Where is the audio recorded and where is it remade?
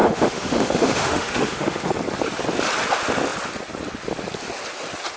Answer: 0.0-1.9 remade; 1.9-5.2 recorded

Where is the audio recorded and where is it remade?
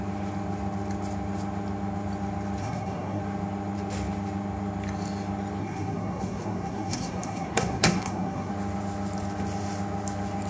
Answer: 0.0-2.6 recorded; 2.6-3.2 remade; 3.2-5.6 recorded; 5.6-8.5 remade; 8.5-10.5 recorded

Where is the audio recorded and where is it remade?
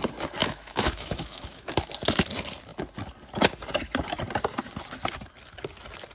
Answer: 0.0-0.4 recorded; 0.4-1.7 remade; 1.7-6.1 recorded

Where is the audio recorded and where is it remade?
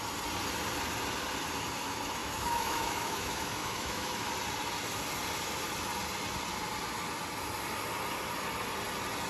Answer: 0.0-2.2 recorded; 2.2-4.3 remade; 4.3-9.3 recorded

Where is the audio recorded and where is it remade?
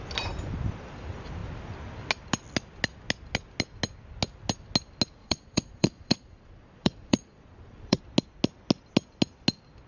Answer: 0.0-5.2 recorded; 5.2-8.0 remade; 8.0-9.9 recorded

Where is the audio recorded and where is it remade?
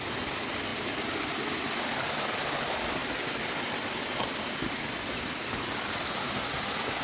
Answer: 0.0-7.0 recorded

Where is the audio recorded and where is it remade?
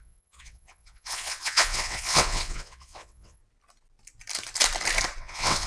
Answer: 0.0-3.4 remade; 3.4-5.2 recorded; 5.2-5.7 remade